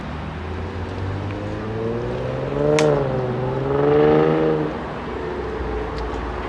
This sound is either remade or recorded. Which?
recorded